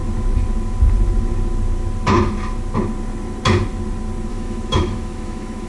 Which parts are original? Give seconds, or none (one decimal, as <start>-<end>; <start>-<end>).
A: 0.0-4.3